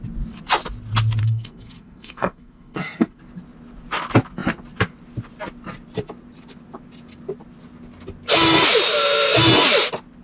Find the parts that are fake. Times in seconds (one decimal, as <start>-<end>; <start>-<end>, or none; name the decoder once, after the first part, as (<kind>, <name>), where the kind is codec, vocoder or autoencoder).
1.2-3.2 (codec, SNAC)